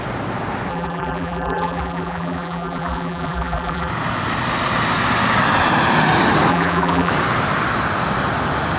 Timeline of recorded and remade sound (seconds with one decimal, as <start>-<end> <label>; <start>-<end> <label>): 0.0-0.7 recorded; 0.7-3.9 remade; 3.9-6.5 recorded; 6.5-7.1 remade; 7.1-8.8 recorded